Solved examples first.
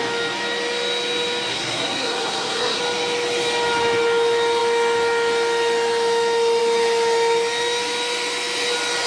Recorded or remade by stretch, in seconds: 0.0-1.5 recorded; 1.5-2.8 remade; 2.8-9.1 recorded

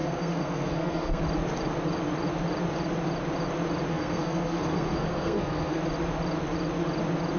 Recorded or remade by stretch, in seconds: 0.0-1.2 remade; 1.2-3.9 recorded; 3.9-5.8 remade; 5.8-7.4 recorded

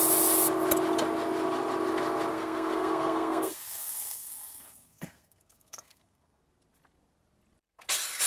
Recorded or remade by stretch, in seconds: 0.0-2.3 recorded; 2.3-6.4 remade; 6.4-8.3 recorded